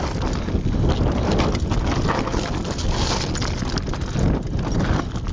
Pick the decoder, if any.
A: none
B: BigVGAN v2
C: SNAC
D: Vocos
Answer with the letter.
A